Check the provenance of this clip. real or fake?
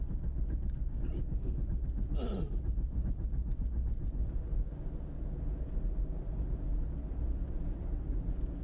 real